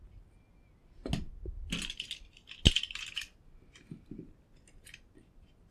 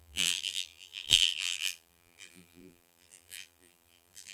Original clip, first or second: first